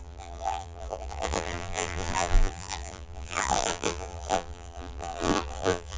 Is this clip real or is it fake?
fake